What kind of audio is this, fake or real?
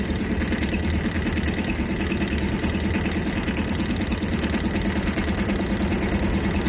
real